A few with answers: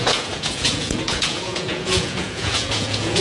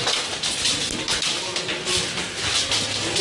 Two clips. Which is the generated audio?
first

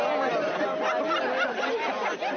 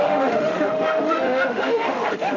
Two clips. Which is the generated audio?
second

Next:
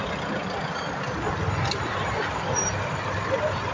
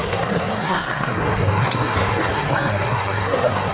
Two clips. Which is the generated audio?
second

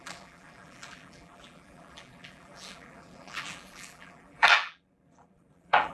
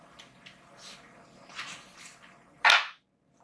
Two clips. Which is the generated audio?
first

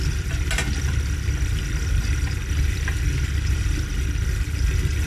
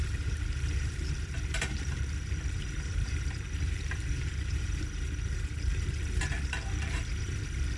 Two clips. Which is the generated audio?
second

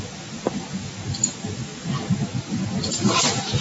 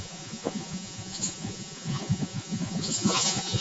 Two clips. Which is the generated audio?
second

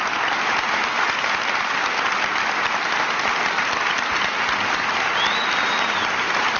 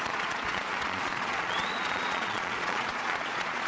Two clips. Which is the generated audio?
second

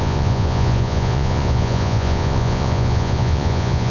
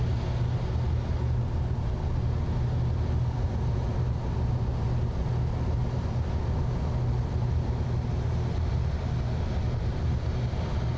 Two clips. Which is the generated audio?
first